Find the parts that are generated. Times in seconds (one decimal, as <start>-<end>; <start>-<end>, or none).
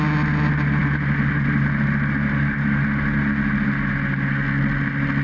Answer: none